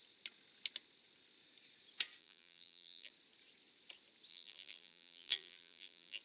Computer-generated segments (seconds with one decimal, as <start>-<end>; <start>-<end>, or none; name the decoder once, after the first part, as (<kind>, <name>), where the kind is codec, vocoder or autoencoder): 2.2-3.1 (vocoder, BigVGAN v2); 4.3-6.2